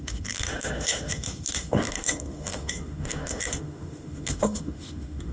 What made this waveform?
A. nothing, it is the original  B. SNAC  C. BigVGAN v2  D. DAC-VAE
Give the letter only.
D